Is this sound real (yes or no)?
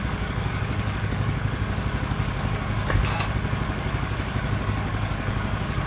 no